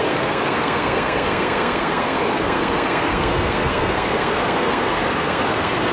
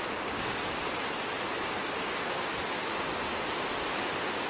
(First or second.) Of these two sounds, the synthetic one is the first